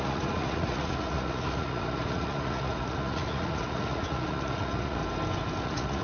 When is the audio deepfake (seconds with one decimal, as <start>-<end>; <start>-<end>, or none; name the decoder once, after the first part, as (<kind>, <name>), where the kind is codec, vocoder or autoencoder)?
0.0-5.0 (vocoder, Vocos); 5.6-6.0